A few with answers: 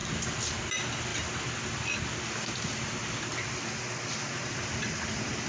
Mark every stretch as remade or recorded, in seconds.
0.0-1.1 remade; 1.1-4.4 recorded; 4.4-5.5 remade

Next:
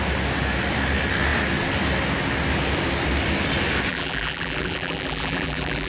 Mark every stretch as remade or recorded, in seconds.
0.0-3.9 recorded; 3.9-5.9 remade

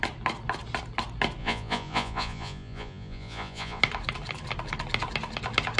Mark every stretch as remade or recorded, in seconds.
0.0-1.4 recorded; 1.4-3.8 remade; 3.8-5.8 recorded

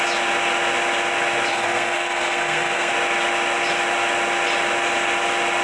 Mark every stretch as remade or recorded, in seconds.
0.0-1.5 recorded; 1.5-2.9 remade; 2.9-5.6 recorded

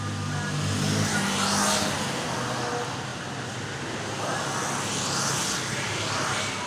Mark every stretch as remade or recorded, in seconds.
0.0-6.7 recorded